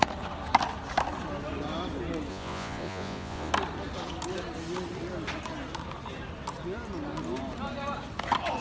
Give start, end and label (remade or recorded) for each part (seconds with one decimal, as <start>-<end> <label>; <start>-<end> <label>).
0.0-2.3 recorded; 2.3-3.5 remade; 3.5-8.6 recorded